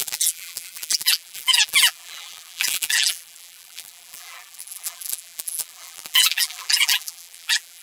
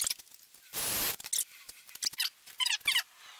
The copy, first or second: first